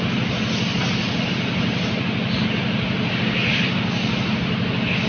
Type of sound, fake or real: real